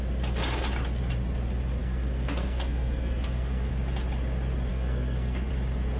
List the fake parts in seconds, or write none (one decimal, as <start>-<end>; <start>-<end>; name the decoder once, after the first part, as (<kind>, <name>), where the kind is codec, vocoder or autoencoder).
1.8-3.7 (codec, SNAC); 4.7-5.5